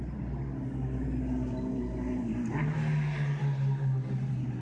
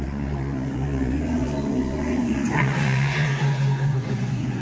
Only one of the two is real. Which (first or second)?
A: first